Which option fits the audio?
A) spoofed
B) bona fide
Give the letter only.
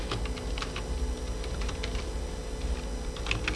B